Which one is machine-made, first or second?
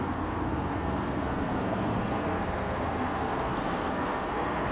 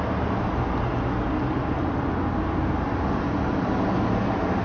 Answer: first